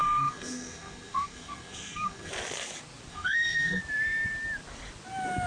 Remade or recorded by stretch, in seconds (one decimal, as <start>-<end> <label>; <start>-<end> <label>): 0.0-2.3 remade; 2.3-3.1 recorded; 3.1-3.8 remade; 3.8-5.5 recorded